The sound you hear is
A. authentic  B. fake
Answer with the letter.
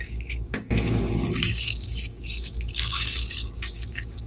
B